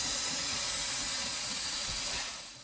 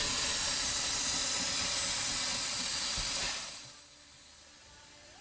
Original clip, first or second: second